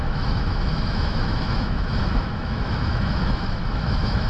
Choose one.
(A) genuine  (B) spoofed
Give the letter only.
B